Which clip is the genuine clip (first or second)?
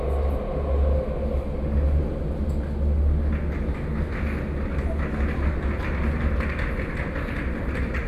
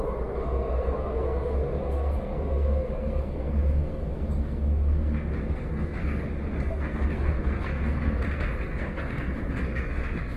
first